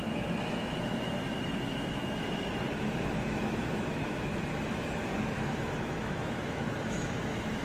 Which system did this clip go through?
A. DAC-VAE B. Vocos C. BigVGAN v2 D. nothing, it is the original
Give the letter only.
A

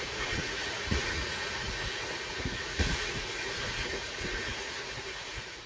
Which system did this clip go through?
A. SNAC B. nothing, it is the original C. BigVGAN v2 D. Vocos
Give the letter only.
D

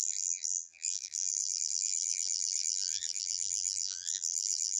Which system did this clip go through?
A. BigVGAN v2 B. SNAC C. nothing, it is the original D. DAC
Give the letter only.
A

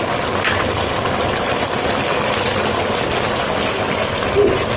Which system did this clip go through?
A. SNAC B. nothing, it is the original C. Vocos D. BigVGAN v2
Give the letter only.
B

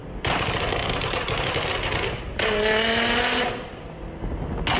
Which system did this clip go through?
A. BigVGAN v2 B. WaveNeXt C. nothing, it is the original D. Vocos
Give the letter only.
C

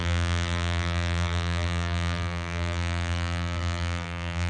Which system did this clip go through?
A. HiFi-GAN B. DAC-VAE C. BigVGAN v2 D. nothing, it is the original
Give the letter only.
C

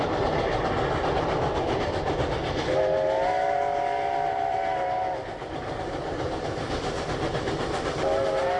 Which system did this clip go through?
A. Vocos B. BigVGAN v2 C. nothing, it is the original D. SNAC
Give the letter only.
C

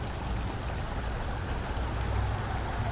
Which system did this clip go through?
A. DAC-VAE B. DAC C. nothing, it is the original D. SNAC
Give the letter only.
C